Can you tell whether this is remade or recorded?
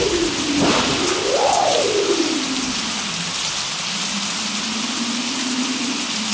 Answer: recorded